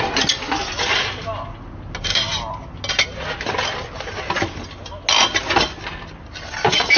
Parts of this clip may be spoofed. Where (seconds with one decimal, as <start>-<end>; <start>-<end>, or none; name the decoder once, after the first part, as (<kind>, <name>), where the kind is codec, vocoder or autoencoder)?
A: none